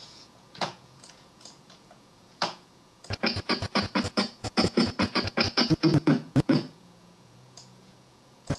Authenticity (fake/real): fake